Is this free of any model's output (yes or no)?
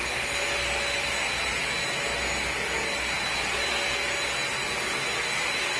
yes